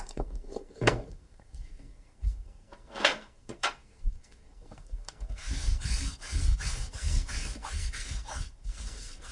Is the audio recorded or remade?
remade